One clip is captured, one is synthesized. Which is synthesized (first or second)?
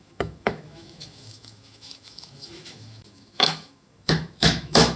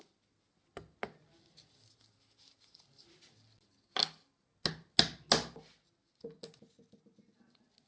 first